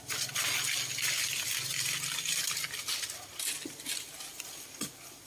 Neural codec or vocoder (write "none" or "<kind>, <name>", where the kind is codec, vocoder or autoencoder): none